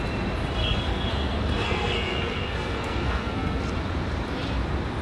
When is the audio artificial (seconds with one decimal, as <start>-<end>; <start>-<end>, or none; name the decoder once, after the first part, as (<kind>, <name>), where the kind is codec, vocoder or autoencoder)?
0.6-3.6 (codec, SNAC)

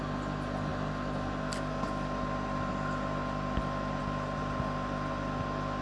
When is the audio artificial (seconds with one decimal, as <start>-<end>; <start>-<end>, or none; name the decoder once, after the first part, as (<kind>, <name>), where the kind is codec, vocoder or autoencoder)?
none

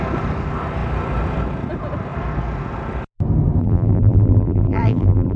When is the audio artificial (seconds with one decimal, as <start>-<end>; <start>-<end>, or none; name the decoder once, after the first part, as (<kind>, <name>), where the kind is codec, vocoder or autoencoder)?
3.6-5.4 (vocoder, BigVGAN v2)

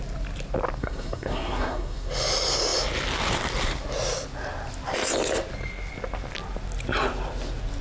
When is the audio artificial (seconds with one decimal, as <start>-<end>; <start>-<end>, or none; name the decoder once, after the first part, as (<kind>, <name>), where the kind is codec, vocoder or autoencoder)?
0.8-2.1 (codec, SNAC)

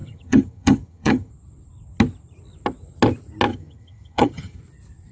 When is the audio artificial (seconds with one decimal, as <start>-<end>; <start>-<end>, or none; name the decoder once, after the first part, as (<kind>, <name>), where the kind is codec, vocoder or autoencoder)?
0.0-1.3 (vocoder, HiFi-GAN); 3.5-4.6

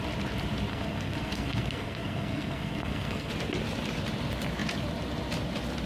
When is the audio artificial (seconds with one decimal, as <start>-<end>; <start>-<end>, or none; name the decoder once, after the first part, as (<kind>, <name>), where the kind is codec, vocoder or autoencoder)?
0.7-3.3 (codec, SNAC)

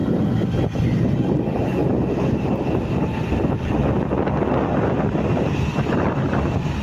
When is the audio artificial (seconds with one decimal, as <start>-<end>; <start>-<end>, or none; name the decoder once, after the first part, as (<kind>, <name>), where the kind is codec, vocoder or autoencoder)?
0.0-3.8 (vocoder, BigVGAN v2); 5.4-6.8

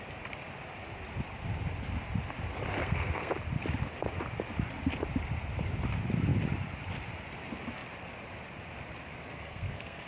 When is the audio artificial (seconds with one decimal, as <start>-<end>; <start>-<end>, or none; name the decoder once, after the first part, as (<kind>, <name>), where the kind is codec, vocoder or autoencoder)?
2.8-3.3 (codec, SNAC); 9.3-10.1